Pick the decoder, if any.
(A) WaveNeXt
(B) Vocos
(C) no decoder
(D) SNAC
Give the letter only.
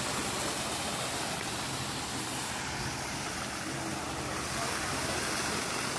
C